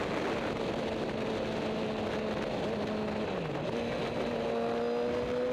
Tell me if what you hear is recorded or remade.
recorded